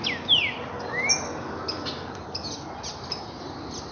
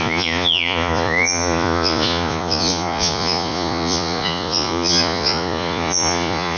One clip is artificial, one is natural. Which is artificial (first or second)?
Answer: second